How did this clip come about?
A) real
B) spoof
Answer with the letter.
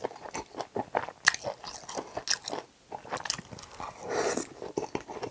A